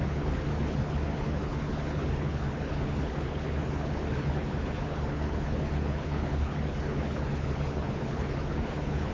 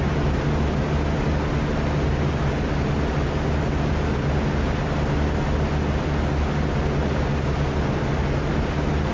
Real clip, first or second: second